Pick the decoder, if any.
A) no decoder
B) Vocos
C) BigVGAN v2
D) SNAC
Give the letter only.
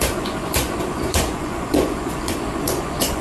B